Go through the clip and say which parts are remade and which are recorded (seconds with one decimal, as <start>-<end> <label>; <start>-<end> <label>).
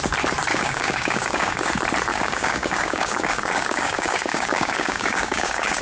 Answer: 0.0-0.5 recorded; 0.5-1.7 remade; 1.7-2.1 recorded; 2.1-5.8 remade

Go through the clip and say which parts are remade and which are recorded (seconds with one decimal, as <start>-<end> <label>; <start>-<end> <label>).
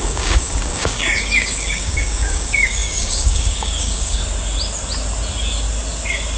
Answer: 0.0-4.2 remade; 4.2-6.4 recorded